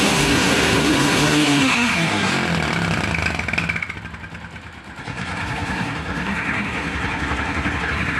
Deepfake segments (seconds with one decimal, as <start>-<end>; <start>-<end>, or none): 0.0-2.3; 5.0-8.2